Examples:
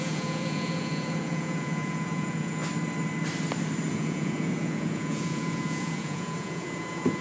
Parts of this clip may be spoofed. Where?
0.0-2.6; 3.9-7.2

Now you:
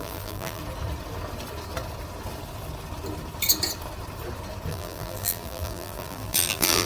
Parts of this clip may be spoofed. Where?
0.0-0.6; 4.7-6.9

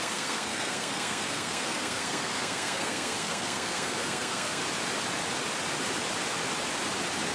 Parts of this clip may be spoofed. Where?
0.0-4.6

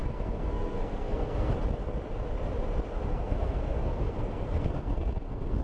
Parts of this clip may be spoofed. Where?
0.0-1.5; 3.1-5.6

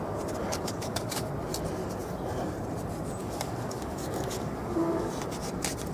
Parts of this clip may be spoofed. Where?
0.4-1.3; 3.2-5.1

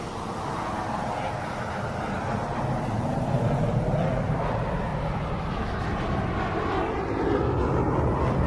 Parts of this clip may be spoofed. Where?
4.9-5.5

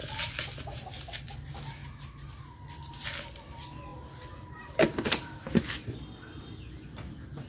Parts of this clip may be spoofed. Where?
none